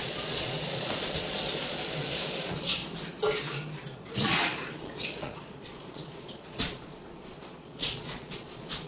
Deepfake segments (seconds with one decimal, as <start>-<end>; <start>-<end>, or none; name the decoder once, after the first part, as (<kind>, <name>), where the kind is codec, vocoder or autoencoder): 0.0-2.8 (vocoder, Vocos); 4.1-8.9